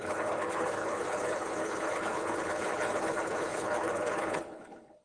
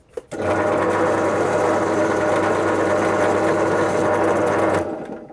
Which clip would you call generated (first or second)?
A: first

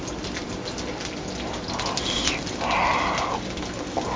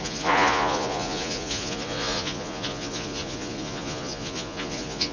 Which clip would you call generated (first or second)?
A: second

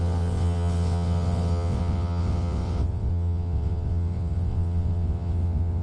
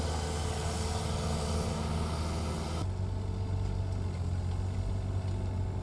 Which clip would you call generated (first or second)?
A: first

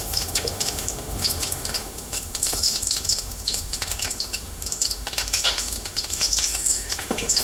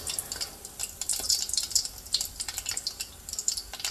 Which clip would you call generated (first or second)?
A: first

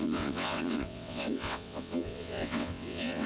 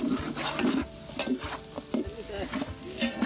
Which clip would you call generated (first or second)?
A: first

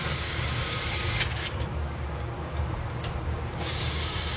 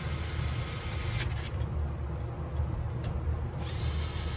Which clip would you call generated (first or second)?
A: first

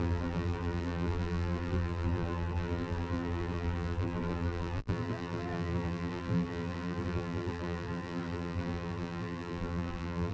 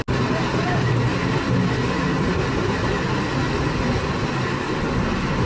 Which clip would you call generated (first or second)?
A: first